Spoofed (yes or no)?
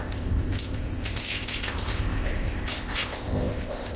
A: yes